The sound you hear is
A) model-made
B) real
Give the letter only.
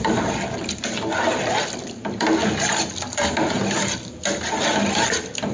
B